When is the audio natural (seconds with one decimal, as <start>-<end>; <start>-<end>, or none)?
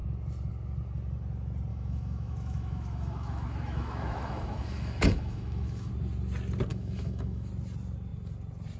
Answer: 0.0-1.7; 5.9-6.7; 7.5-8.8